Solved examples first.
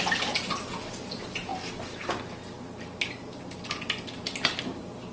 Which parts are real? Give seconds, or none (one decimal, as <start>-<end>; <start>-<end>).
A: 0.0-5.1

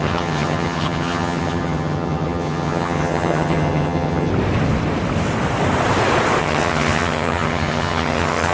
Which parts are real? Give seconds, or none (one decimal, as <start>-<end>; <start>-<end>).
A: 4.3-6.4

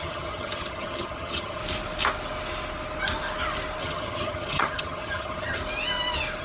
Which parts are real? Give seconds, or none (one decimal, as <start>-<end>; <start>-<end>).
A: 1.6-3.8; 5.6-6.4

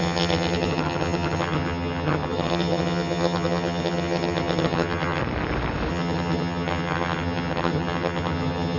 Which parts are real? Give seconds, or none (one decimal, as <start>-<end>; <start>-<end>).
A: 5.2-5.9

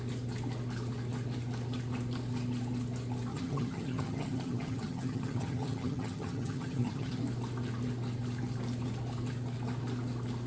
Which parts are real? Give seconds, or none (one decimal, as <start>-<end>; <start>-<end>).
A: 0.0-3.3; 7.2-10.5

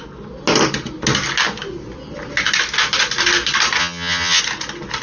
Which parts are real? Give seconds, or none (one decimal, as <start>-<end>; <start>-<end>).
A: 0.0-3.8; 4.4-5.0